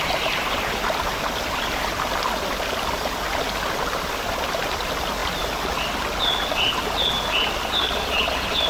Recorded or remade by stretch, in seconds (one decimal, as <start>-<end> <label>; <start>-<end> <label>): 0.0-8.7 recorded